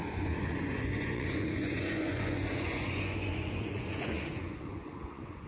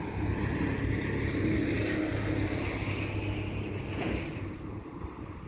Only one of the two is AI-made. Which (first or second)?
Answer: first